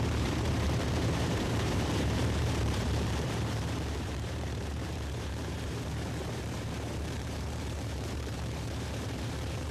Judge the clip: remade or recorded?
remade